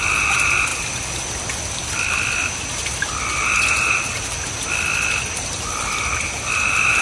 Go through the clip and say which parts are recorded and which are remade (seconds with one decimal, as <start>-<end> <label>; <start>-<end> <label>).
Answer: 0.0-7.0 recorded